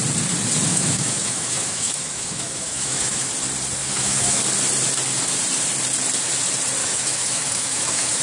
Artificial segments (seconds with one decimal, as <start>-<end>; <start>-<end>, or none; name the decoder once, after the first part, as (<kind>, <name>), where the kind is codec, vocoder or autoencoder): 0.7-3.3 (autoencoder, DAC-VAE); 3.8-4.4; 6.8-8.2